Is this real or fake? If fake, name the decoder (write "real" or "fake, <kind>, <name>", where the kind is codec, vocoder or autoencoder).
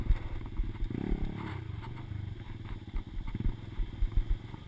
real